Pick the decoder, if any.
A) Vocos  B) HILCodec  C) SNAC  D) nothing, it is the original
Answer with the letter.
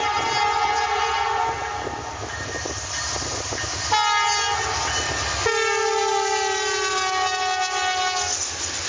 D